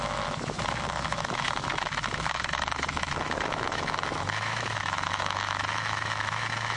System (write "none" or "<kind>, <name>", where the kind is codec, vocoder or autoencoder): autoencoder, DAC-VAE